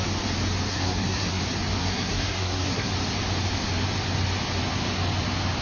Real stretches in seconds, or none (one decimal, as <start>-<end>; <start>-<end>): 0.0-0.7; 1.4-1.8; 2.9-5.6